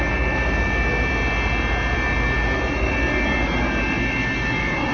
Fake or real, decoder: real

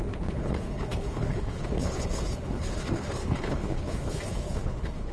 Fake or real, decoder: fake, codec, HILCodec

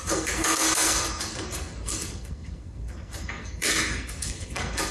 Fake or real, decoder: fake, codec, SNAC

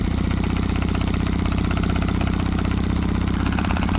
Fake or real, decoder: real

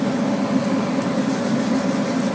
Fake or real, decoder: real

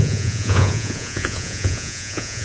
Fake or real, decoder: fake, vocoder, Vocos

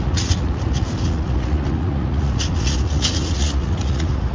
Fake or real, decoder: fake, vocoder, Vocos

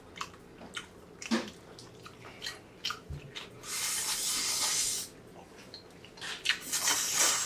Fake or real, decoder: real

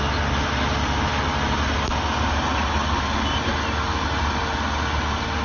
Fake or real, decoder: real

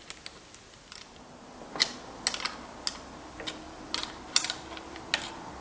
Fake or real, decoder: real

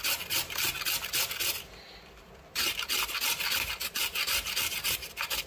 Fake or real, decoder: real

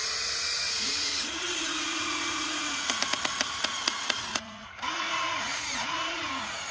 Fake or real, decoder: fake, vocoder, Vocos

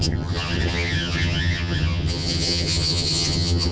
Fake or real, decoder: fake, vocoder, HiFi-GAN